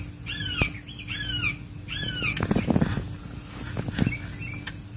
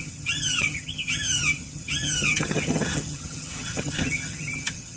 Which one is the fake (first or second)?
second